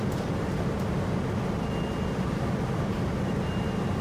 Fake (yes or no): no